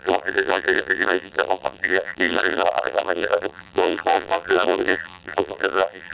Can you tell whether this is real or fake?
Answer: fake